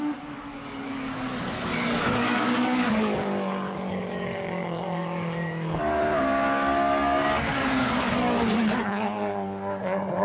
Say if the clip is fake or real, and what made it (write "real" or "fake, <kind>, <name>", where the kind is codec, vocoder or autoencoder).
fake, codec, DAC